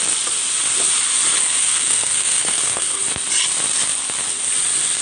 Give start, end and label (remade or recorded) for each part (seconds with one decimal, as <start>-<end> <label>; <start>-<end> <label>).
0.0-1.6 recorded; 1.6-3.0 remade; 3.0-5.0 recorded